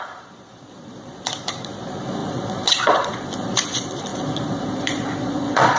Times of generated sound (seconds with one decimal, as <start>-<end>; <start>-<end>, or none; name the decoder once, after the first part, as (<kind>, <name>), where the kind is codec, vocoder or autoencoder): 0.0-5.8 (vocoder, Vocos)